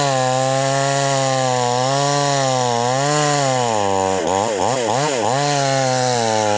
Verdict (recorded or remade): recorded